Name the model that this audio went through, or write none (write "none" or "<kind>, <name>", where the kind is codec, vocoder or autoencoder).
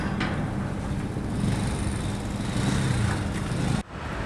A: none